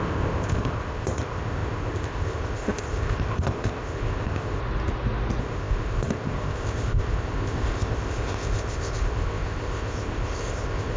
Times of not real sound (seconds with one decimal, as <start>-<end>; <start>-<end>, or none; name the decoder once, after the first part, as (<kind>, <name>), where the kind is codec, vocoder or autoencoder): 0.0-4.6 (codec, ZipCodec); 5.4-11.0